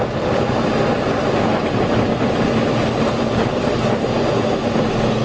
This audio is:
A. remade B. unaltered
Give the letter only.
B